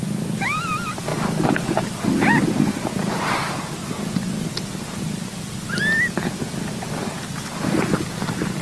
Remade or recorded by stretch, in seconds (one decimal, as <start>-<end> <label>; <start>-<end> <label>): 0.0-8.6 recorded